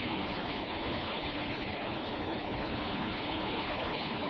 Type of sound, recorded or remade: remade